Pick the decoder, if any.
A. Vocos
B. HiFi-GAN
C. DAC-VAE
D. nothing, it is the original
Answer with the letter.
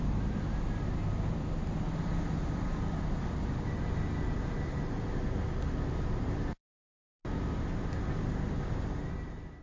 D